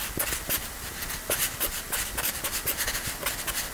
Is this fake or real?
real